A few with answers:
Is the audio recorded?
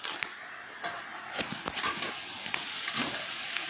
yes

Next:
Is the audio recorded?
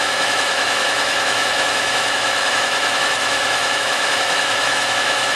no